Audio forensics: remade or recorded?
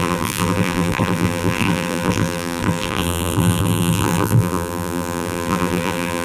remade